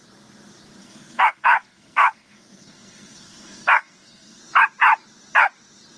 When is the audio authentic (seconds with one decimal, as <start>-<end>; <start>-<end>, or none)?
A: 0.0-0.8; 4.4-6.0